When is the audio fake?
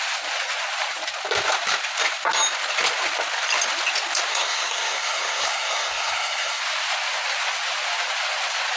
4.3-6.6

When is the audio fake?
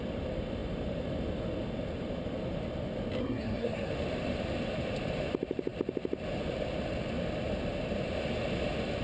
3.2-3.9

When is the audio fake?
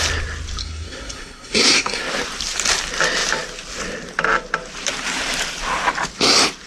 0.6-2.0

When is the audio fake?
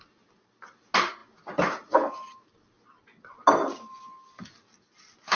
none